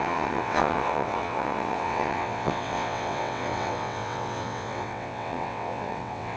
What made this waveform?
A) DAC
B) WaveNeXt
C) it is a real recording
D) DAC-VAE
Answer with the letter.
B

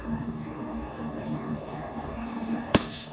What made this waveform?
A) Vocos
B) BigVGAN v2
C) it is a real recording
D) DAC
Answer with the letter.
D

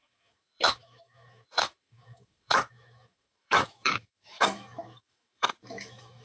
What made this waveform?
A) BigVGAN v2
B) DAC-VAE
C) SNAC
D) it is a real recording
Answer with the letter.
B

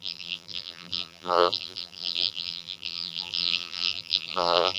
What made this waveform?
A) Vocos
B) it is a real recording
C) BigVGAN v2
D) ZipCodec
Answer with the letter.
C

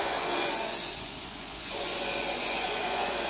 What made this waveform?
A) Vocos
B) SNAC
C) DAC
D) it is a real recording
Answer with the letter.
A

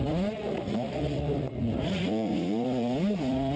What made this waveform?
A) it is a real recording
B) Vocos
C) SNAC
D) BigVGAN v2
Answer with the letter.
B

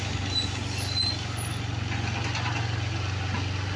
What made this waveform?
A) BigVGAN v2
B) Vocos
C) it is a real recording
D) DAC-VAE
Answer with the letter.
C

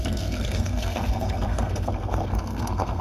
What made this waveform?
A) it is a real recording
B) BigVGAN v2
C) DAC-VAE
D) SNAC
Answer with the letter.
D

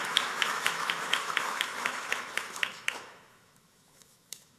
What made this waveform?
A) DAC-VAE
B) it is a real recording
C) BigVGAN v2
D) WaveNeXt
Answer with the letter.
A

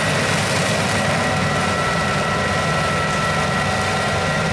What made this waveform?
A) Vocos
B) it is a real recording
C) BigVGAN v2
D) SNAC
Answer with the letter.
B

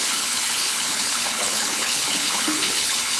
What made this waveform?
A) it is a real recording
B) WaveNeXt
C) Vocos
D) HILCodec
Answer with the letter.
D